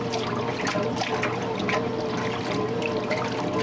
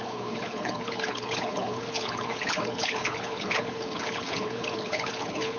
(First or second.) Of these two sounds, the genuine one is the first